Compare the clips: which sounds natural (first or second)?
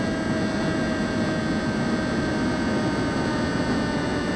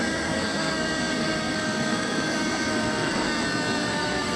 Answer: first